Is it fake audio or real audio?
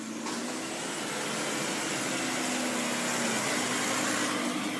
real